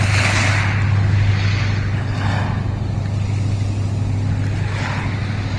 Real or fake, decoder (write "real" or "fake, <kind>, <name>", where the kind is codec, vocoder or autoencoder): real